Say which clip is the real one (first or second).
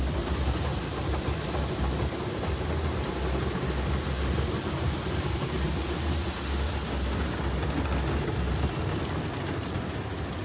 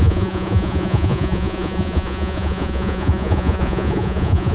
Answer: first